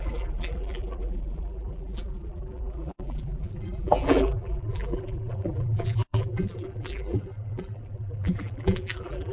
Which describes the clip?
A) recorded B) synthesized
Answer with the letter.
B